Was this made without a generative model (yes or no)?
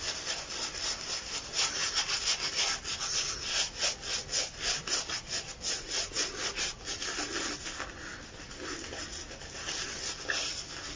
yes